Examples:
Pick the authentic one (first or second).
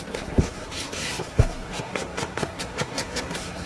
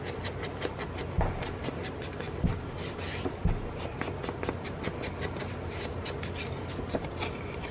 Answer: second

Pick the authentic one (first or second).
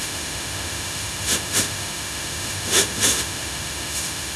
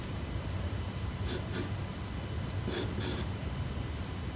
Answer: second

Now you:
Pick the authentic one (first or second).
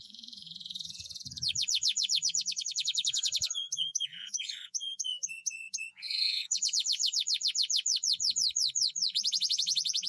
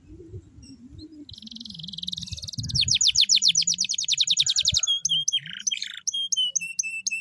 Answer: second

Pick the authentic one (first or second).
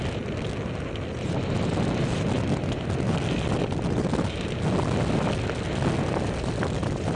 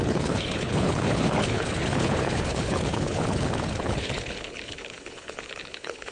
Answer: first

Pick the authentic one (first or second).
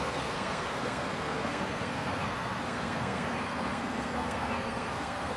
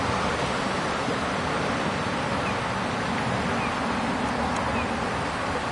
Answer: second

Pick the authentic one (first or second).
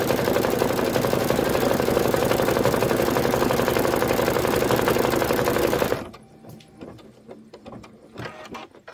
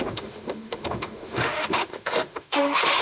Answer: first